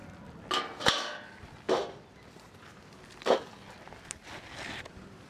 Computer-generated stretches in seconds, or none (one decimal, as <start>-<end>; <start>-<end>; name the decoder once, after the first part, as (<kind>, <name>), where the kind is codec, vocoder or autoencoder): none